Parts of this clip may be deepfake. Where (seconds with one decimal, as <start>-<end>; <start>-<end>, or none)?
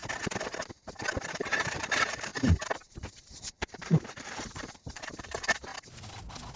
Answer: 1.3-2.3; 2.9-5.7